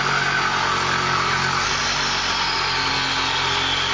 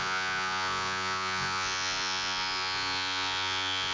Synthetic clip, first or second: second